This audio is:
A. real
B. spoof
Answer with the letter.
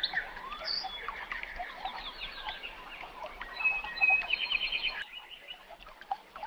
B